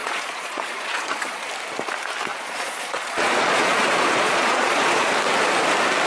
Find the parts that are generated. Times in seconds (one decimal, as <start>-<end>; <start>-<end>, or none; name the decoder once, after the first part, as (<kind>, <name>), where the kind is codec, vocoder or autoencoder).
0.0-1.5 (vocoder, Vocos); 2.3-5.1